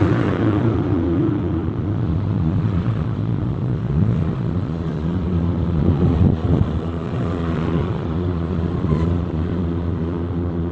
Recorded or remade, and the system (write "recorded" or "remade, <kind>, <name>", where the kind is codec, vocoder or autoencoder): remade, vocoder, Vocos